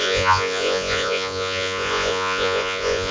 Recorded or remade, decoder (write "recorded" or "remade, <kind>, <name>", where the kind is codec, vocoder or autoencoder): remade, vocoder, Vocos